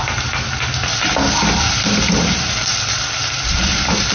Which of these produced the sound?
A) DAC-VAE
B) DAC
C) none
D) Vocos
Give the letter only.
C